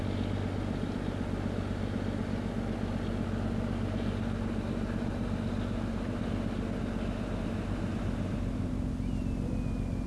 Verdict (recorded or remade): recorded